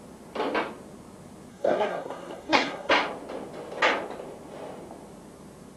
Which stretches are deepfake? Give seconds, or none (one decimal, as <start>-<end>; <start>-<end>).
1.5-2.9